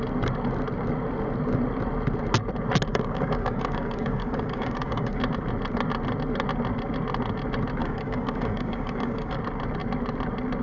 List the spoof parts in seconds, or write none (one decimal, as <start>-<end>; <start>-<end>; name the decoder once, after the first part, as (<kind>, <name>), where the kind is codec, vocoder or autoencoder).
2.9-5.2 (codec, DAC); 7.8-9.4